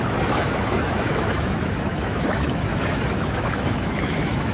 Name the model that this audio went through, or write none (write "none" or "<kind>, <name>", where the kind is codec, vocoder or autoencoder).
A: autoencoder, DAC-VAE